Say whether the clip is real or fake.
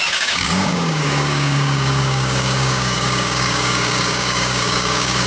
fake